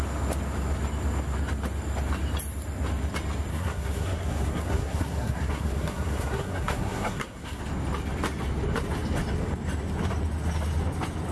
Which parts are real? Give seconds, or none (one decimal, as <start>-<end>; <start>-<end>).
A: 0.0-3.5; 7.6-11.3